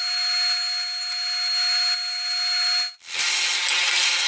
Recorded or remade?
recorded